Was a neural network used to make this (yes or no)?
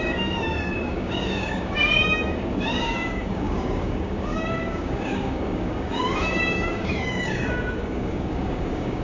yes